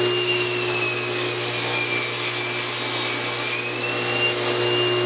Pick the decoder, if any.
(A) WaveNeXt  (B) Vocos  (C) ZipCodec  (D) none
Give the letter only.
D